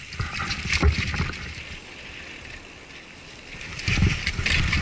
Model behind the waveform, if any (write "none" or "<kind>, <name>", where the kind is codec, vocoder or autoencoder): none